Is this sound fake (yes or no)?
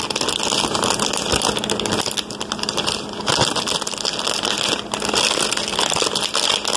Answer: no